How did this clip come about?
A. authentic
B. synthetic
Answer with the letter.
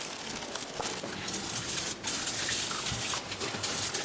A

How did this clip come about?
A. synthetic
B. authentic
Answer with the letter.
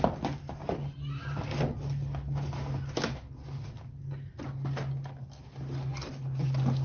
B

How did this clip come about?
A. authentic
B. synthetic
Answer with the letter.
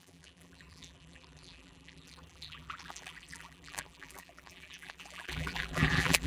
B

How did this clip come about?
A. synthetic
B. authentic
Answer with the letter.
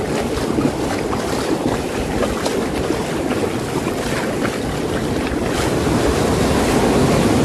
B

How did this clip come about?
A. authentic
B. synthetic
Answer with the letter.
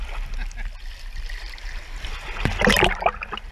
A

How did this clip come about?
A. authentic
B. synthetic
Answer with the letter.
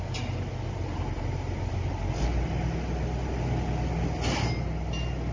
A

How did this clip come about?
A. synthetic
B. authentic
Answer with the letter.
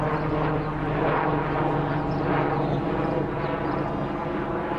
B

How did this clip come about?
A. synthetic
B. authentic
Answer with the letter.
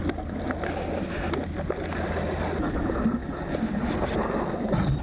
B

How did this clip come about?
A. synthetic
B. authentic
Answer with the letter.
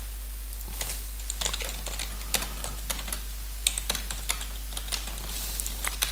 B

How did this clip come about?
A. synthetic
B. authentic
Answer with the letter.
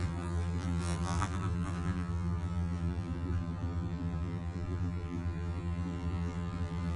A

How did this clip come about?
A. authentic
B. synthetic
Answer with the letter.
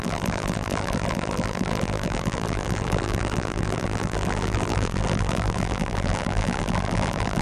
B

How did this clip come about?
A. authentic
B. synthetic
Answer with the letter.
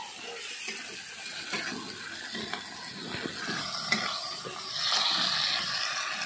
A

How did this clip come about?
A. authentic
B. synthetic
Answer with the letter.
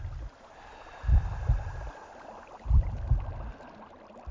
A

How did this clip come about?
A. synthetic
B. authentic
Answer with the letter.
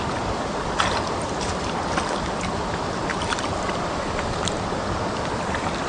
A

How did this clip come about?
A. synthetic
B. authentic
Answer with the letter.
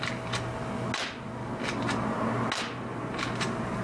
B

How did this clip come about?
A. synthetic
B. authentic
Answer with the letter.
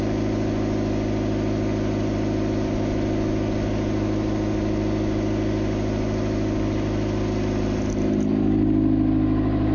B